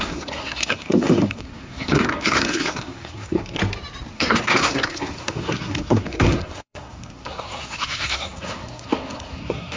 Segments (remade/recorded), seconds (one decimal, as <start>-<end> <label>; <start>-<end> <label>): 0.0-3.6 remade; 3.6-4.1 recorded; 4.1-9.8 remade